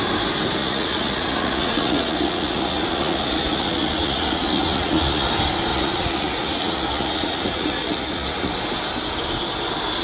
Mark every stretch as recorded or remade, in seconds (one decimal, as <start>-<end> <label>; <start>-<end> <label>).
0.0-0.6 recorded; 0.6-5.3 remade; 5.3-5.7 recorded; 5.7-8.6 remade; 8.6-10.0 recorded

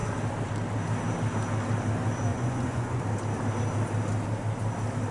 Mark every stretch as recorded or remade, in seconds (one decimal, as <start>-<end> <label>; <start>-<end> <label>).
0.0-2.3 recorded; 2.3-3.0 remade; 3.0-5.1 recorded

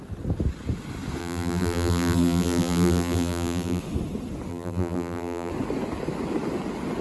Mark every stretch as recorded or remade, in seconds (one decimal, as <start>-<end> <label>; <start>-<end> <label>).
0.0-1.2 recorded; 1.2-3.8 remade; 3.8-4.5 recorded; 4.5-5.5 remade; 5.5-7.0 recorded

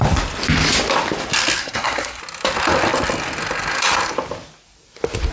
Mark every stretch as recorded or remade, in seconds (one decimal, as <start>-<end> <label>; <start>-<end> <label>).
0.0-1.6 recorded; 1.6-2.2 remade; 2.2-5.3 recorded

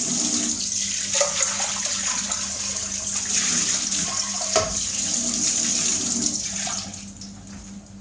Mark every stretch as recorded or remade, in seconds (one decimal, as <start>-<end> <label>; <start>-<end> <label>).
0.0-8.0 recorded

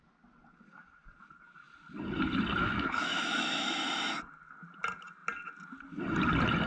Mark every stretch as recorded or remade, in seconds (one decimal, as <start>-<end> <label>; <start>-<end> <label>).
0.0-2.6 recorded; 2.6-3.7 remade; 3.7-6.7 recorded